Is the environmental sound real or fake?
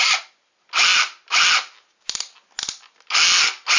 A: real